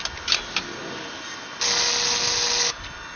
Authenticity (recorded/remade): recorded